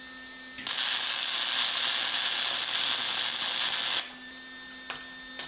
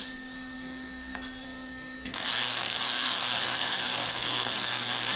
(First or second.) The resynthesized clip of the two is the second